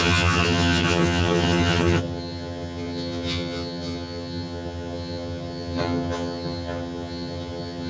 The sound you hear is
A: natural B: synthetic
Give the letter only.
B